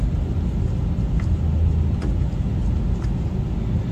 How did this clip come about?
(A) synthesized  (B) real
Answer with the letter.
B